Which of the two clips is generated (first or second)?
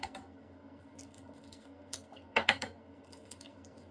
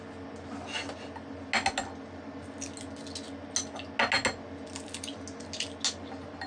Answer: first